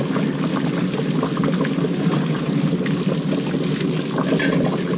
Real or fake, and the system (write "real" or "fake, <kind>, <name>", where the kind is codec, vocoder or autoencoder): real